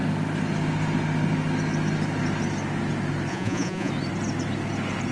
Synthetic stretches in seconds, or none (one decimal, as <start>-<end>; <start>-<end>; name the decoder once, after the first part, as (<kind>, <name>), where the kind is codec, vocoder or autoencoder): 3.3-3.9 (vocoder, Vocos)

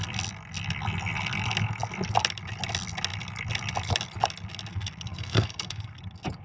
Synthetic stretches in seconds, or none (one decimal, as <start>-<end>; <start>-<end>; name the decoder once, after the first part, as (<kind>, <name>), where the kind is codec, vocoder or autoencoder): 4.7-6.0 (codec, SNAC)

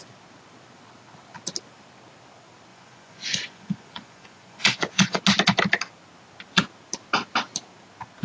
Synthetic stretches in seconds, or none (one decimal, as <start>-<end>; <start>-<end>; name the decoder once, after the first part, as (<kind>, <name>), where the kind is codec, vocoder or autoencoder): 2.7-5.2 (vocoder, Vocos)

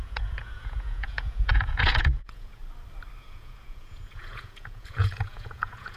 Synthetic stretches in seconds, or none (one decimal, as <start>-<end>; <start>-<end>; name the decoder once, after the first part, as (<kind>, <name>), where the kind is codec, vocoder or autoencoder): 0.0-2.6 (vocoder, Vocos); 3.2-6.0

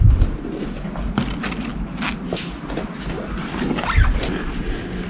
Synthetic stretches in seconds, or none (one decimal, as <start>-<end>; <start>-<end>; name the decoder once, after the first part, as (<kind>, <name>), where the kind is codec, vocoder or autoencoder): none

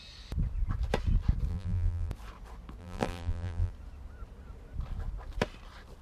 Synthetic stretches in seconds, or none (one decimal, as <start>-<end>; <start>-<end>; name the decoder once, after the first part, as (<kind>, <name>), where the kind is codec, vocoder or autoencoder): 1.5-2.1 (vocoder, BigVGAN v2); 2.8-3.7